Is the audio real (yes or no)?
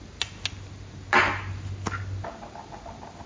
yes